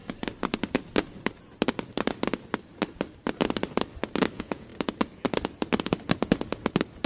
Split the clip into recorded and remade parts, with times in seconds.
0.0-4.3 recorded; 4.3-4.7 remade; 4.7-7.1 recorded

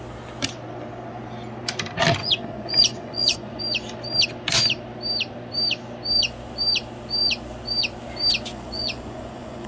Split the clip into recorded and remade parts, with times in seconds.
0.0-2.2 recorded; 2.2-3.6 remade; 3.6-8.5 recorded; 8.5-9.7 remade

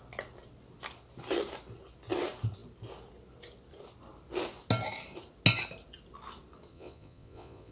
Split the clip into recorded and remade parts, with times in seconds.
0.0-6.7 recorded; 6.7-7.7 remade

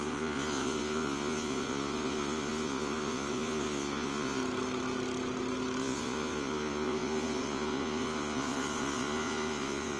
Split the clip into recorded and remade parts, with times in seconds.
0.0-4.4 remade; 4.4-5.8 recorded; 5.8-10.0 remade

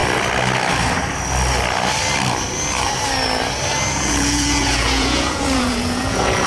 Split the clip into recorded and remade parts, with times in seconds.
0.0-3.9 recorded; 3.9-6.5 remade

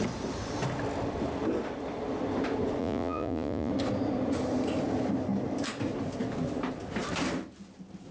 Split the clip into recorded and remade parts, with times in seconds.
0.0-2.8 recorded; 2.8-3.7 remade; 3.7-8.1 recorded

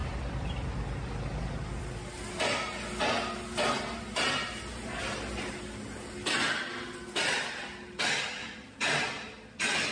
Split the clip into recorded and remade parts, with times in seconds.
0.0-9.9 recorded

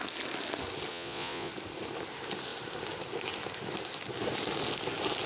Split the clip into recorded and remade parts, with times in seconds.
0.0-0.9 recorded; 0.9-1.5 remade; 1.5-5.3 recorded